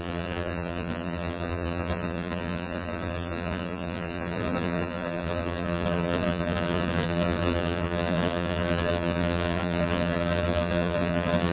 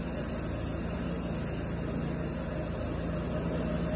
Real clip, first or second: second